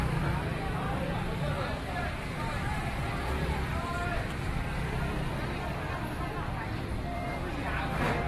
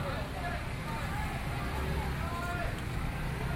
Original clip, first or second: second